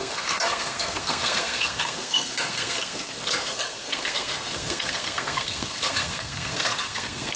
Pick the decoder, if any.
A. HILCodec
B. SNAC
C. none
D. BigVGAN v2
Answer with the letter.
B